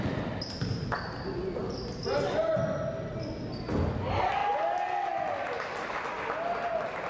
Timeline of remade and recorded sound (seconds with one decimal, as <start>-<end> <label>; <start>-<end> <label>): 0.0-7.1 recorded